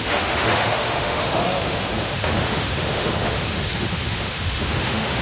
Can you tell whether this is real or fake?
fake